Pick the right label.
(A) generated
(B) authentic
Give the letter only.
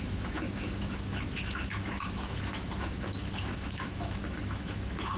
A